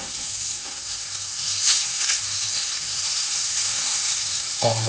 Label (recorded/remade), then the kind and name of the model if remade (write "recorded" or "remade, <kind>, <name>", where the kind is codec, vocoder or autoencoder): remade, codec, SNAC